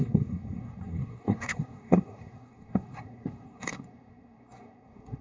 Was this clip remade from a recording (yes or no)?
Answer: yes